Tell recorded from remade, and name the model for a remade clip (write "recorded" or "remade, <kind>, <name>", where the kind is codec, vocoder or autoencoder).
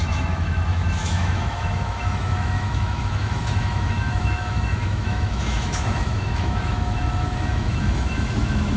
remade, autoencoder, DAC-VAE